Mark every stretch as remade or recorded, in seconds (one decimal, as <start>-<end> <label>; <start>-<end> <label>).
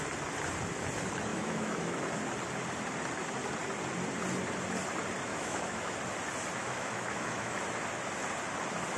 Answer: 0.0-1.3 recorded; 1.3-2.0 remade; 2.0-5.3 recorded; 5.3-6.0 remade; 6.0-6.6 recorded; 6.6-7.6 remade; 7.6-9.0 recorded